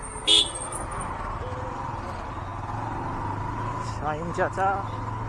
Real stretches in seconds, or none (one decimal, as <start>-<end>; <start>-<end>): 0.0-5.3